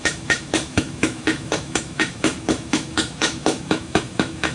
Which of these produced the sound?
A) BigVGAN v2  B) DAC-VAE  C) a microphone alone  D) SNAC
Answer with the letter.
B